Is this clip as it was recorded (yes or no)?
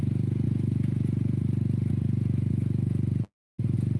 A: yes